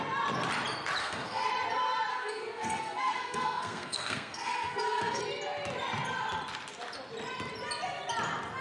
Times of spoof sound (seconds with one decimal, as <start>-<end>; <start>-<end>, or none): 1.0-1.5; 2.1-5.2